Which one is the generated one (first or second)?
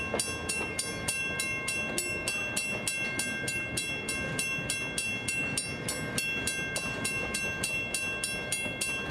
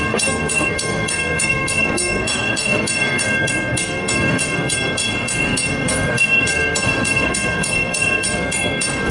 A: second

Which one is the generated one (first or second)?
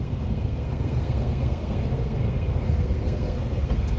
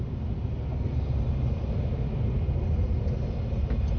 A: first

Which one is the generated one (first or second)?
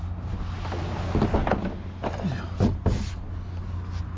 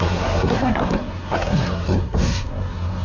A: second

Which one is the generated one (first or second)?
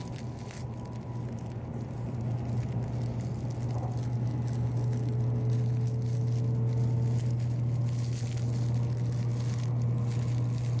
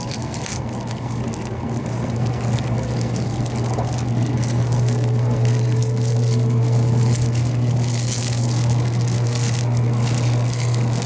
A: second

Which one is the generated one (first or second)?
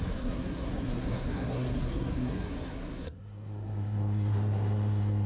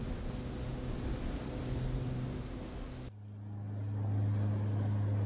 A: first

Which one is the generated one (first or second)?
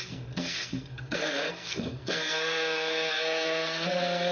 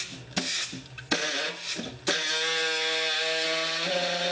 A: first